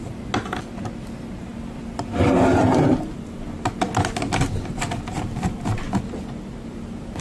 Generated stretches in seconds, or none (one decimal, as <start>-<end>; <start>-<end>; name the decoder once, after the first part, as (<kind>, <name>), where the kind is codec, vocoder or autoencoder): none

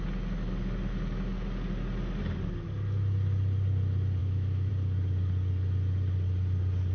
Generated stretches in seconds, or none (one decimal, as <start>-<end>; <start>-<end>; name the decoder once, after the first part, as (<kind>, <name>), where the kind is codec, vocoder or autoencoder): 4.2-4.7 (autoencoder, DAC-VAE)